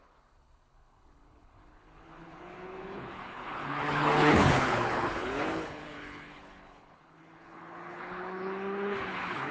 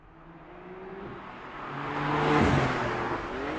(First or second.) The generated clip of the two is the first